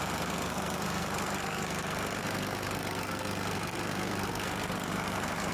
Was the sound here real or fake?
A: fake